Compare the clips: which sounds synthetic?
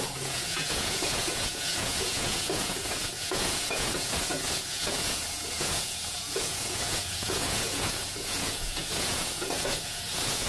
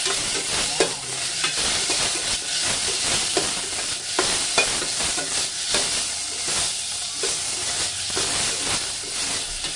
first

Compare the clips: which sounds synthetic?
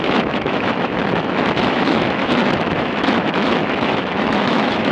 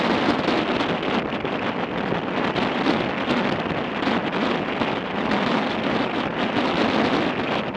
first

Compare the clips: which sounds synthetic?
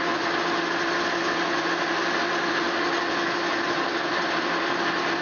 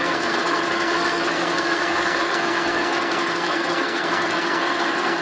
second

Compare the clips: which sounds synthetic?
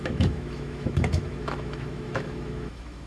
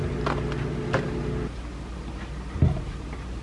first